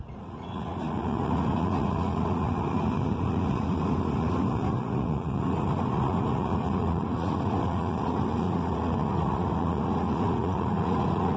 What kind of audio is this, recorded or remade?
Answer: remade